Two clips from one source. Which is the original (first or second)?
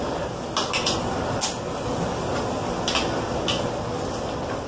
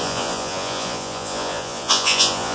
first